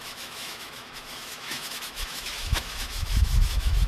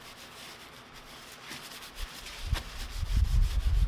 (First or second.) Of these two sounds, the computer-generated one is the first